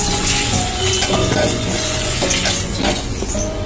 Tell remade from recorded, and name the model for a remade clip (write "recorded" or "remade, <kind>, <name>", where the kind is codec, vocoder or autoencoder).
remade, vocoder, Vocos